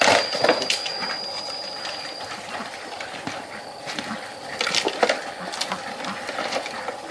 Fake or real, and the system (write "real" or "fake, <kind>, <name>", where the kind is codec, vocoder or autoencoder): real